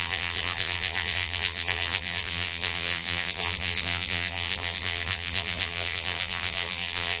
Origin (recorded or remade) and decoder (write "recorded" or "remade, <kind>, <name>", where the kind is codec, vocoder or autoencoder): remade, vocoder, BigVGAN v2